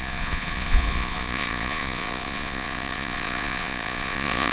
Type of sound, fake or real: fake